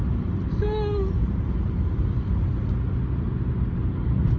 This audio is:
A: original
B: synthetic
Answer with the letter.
A